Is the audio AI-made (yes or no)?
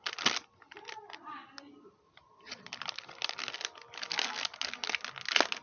no